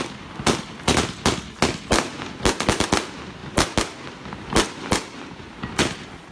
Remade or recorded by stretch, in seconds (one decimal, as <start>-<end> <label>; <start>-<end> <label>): 0.0-6.3 recorded